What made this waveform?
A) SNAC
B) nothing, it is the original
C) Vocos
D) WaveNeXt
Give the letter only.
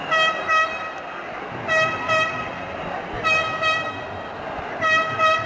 B